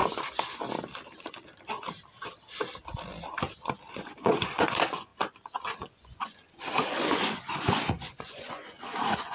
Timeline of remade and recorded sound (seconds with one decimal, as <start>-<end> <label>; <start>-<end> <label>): 0.0-3.9 recorded; 3.9-5.1 remade; 5.1-5.8 recorded; 5.8-9.3 remade